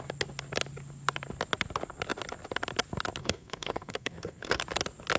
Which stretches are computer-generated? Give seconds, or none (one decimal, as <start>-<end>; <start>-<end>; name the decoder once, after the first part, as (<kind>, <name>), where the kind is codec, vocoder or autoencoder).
3.2-4.6 (codec, SNAC)